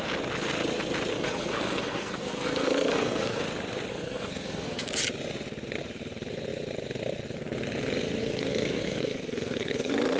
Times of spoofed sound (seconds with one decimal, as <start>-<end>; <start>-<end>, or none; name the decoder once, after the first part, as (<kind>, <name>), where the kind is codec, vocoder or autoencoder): 1.1-3.4 (codec, SNAC); 3.9-4.9; 8.2-10.2